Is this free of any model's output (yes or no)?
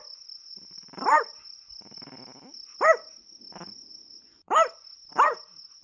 yes